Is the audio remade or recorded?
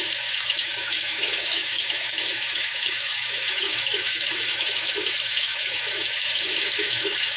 remade